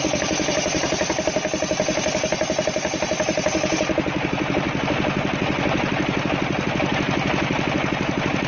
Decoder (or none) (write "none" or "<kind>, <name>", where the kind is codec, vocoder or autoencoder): none